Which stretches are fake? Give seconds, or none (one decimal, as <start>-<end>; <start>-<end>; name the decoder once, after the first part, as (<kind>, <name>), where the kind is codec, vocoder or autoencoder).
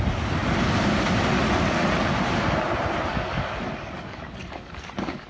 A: 3.1-5.3 (codec, DAC)